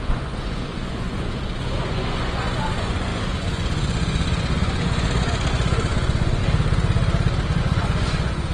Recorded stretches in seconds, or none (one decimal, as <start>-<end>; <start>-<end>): 6.4-7.6